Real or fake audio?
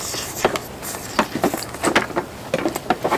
real